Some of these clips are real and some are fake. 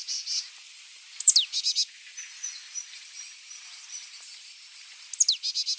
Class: real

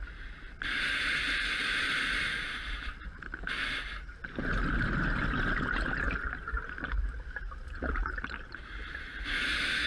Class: real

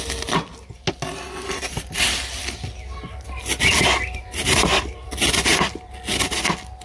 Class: real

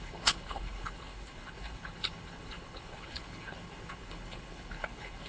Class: fake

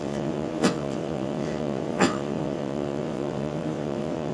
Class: fake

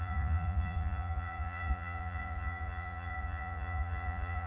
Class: fake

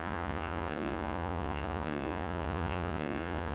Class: fake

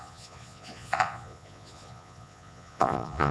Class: fake